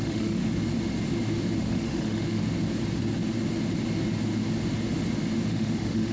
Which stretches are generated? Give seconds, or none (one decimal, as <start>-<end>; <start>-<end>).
0.0-0.4; 1.6-2.4; 5.5-6.1